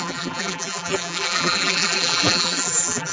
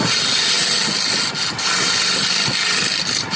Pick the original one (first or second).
second